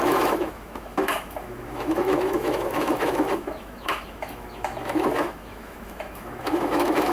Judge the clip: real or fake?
fake